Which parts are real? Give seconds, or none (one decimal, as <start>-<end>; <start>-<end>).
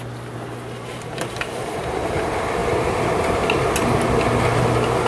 0.0-5.1